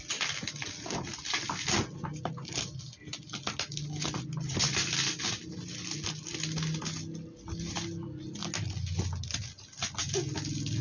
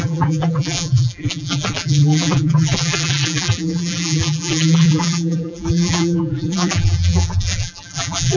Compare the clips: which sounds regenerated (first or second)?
second